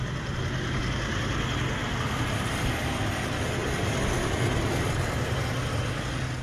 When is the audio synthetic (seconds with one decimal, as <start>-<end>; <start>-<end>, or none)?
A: 1.8-2.8